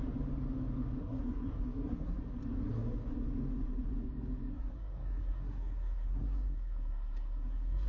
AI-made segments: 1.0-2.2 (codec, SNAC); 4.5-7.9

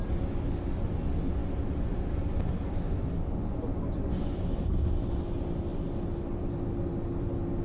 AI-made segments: none

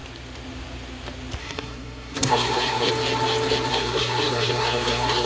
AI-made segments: 1.4-2.9 (codec, SNAC); 3.7-5.3